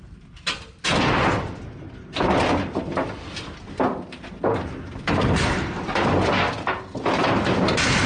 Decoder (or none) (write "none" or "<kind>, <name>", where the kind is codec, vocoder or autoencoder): none